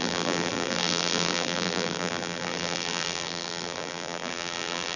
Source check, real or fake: fake